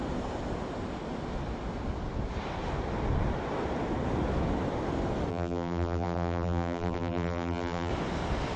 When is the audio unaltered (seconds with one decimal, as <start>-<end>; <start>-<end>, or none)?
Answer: 0.0-5.3; 7.9-8.6